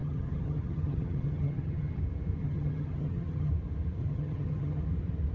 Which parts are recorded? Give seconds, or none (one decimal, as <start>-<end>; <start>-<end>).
2.0-2.4; 3.5-4.0; 4.8-5.3